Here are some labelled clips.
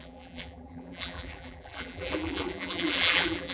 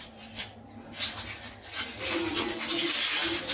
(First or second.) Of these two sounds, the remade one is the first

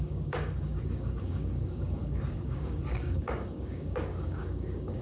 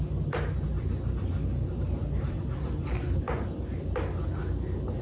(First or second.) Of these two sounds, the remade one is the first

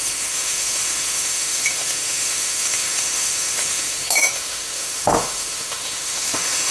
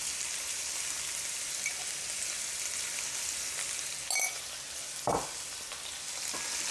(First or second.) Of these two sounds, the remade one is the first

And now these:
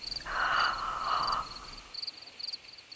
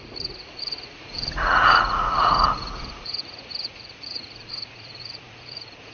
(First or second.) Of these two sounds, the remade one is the second